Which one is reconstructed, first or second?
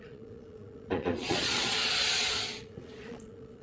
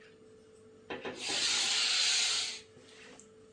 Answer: first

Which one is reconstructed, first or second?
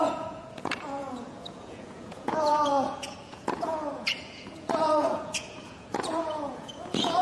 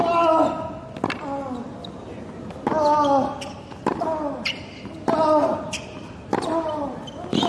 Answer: first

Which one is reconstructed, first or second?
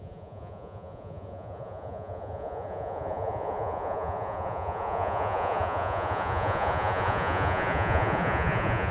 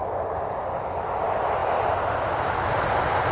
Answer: first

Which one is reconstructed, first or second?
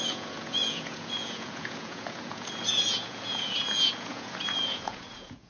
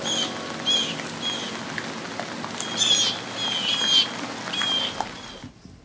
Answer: first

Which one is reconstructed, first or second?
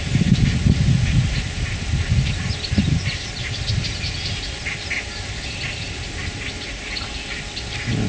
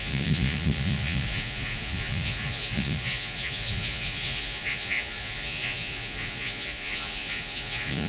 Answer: second